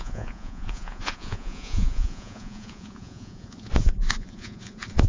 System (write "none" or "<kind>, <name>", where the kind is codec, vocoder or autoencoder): vocoder, Vocos